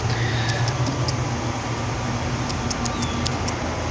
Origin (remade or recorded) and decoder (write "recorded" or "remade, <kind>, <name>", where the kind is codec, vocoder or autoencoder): recorded